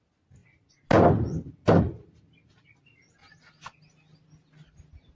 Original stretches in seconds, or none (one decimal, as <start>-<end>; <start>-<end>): 0.0-5.1